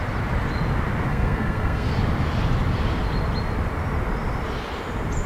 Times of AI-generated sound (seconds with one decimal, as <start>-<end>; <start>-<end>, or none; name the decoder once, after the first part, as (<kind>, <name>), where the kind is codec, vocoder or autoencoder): 1.1-1.9 (codec, SNAC)